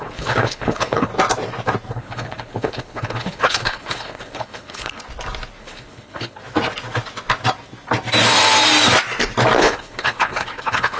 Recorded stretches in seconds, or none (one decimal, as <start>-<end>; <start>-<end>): 1.1-1.9; 5.0-5.6; 6.4-9.6